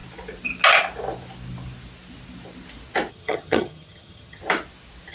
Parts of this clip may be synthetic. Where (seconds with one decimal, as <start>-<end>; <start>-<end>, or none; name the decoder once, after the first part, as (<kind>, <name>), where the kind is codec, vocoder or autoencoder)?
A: 3.1-4.4 (vocoder, HiFi-GAN)